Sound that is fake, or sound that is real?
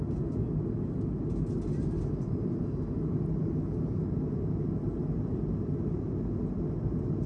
real